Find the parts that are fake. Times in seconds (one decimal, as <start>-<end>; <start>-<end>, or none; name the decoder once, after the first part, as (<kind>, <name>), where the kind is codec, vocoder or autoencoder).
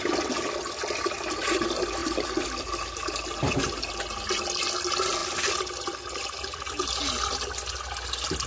2.0-2.9 (vocoder, BigVGAN v2)